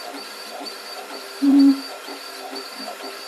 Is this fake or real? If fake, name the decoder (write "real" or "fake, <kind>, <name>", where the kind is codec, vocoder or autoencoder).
fake, vocoder, BigVGAN v2